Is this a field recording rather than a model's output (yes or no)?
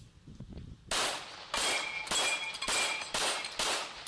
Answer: yes